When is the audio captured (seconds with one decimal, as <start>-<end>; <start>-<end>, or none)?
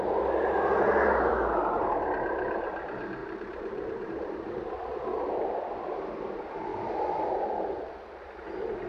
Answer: 0.0-3.2; 4.1-8.9